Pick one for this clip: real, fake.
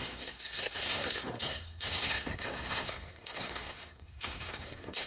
fake